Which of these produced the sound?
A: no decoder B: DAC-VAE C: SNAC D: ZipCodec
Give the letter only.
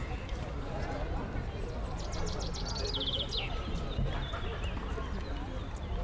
A